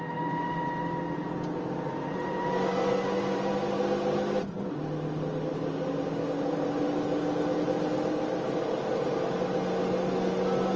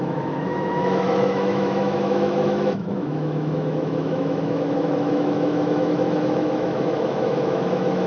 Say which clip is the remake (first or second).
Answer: second